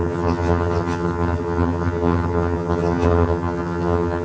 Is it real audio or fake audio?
fake